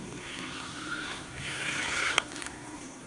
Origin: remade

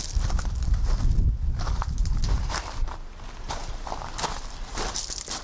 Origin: remade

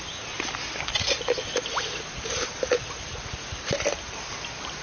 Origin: recorded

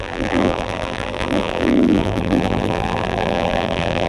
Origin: remade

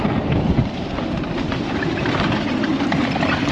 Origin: remade